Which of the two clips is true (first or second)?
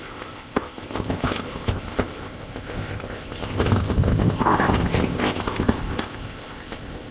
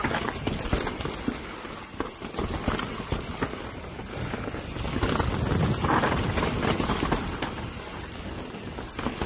second